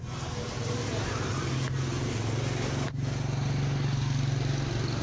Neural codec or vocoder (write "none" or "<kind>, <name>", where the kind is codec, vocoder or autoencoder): none